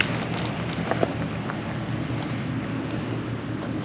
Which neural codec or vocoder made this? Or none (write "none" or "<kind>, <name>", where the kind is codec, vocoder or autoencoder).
none